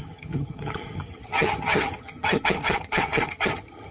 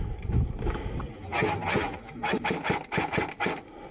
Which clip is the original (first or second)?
second